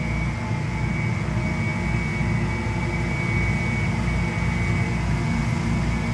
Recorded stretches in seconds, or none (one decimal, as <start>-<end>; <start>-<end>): 0.0-6.1